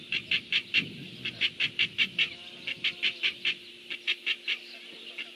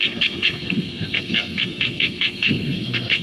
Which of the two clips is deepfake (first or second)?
second